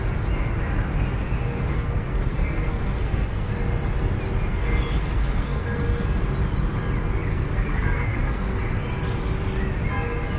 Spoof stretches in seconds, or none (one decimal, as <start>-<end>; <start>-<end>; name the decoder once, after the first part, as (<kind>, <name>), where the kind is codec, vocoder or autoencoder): 1.7-3.5 (codec, SNAC); 4.5-6.2; 7.3-8.6